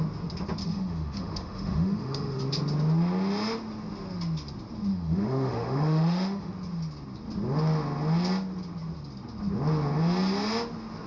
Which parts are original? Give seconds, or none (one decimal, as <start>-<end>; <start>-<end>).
0.0-0.6; 2.4-4.9; 6.5-11.1